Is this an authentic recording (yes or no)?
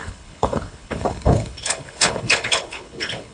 no